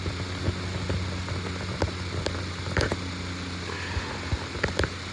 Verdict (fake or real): real